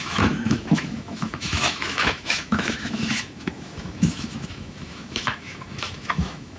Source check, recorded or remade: remade